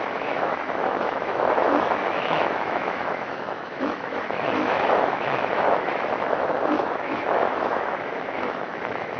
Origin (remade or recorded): remade